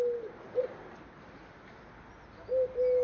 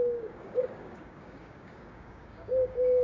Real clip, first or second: first